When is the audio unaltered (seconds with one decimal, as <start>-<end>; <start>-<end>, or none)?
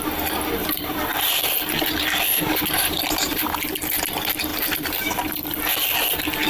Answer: 0.0-0.6; 1.4-3.2; 4.0-4.5; 5.0-6.5